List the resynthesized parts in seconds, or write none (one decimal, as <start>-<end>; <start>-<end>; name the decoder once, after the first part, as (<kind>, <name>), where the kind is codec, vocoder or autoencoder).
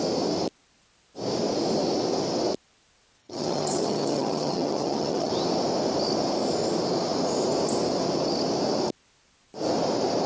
3.2-5.3 (vocoder, HiFi-GAN)